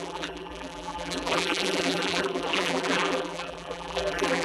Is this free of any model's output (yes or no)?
no